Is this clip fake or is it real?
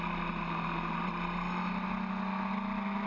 real